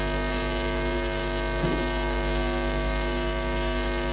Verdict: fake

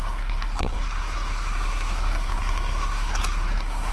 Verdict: fake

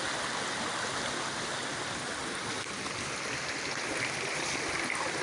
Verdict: real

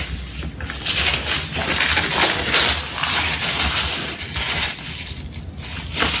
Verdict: real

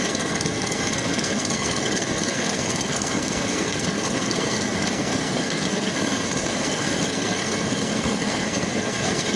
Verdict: fake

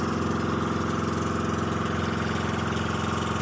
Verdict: real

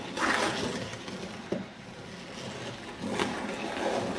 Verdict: real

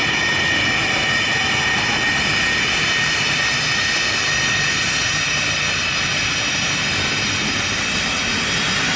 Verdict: real